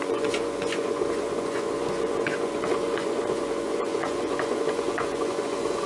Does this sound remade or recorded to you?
remade